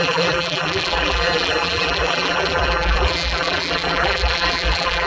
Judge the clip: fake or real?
fake